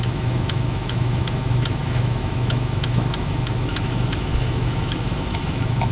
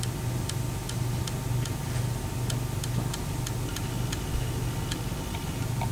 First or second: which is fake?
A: first